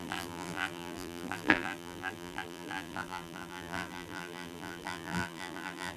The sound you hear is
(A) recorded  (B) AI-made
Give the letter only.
B